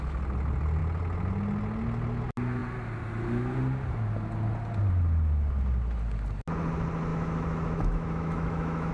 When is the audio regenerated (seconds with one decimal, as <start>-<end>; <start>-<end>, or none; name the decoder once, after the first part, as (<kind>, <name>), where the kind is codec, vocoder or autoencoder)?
7.1-8.9 (autoencoder, DAC-VAE)